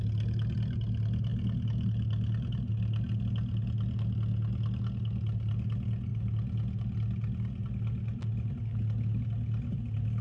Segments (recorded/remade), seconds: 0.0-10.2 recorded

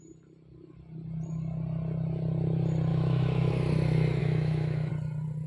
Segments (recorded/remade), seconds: 0.0-2.9 recorded; 2.9-3.5 remade; 3.5-4.2 recorded; 4.2-4.9 remade; 4.9-5.5 recorded

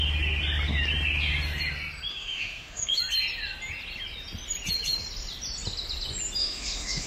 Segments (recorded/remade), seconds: 0.0-2.1 recorded; 2.1-3.0 remade; 3.0-6.4 recorded; 6.4-7.1 remade

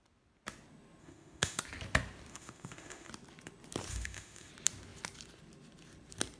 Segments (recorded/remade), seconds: 0.0-1.0 recorded; 1.0-1.6 remade; 1.6-2.3 recorded; 2.3-3.1 remade; 3.1-3.9 recorded; 3.9-4.5 remade; 4.5-6.4 recorded

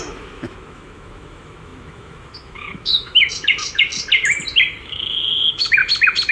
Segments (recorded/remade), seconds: 0.0-3.9 remade; 3.9-4.8 recorded; 4.8-5.8 remade; 5.8-6.3 recorded